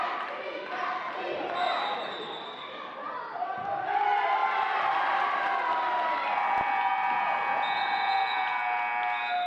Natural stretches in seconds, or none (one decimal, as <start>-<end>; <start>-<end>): 0.0-9.5